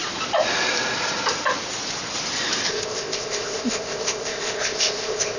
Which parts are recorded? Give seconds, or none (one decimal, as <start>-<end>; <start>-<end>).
0.0-2.7